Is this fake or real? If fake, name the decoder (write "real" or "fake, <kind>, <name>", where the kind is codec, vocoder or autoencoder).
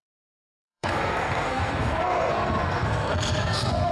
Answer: fake, codec, SNAC